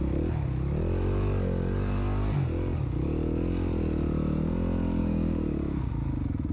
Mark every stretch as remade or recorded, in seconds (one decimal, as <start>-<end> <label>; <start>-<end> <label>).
0.0-5.0 recorded; 5.0-5.9 remade; 5.9-6.5 recorded